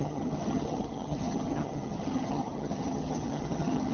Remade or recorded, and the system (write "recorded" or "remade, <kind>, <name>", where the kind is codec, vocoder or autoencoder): remade, vocoder, HiFi-GAN